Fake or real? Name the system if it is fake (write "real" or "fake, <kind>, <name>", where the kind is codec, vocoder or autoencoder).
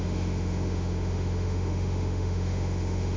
fake, autoencoder, DAC-VAE